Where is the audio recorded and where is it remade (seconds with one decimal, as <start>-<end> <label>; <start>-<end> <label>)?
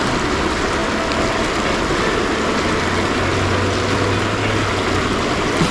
0.0-5.7 recorded